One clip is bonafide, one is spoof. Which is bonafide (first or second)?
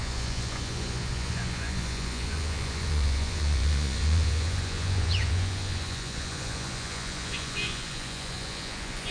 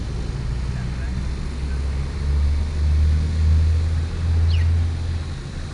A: second